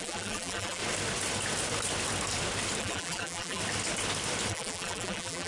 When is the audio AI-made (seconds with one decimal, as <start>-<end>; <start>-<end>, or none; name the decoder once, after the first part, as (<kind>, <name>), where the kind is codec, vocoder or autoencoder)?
0.0-0.8 (vocoder, BigVGAN v2); 2.8-3.6; 4.5-5.5